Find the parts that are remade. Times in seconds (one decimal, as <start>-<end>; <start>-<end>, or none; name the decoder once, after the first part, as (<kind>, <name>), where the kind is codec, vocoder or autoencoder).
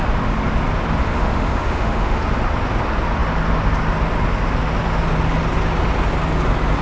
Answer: 1.0-2.2 (autoencoder, DAC-VAE)